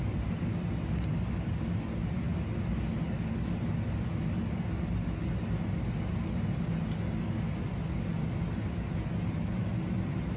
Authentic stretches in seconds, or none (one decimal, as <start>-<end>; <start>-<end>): 0.0-10.4